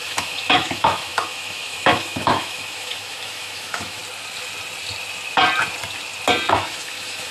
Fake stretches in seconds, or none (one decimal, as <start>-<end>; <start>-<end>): 0.0-4.0; 6.5-7.3